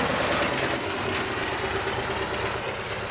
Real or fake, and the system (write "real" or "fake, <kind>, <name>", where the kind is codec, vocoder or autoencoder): real